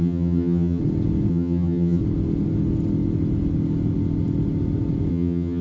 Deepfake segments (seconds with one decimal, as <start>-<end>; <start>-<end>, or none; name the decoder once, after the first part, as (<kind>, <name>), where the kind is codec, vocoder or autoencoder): 0.0-0.8 (vocoder, HiFi-GAN); 1.3-2.0; 5.1-5.6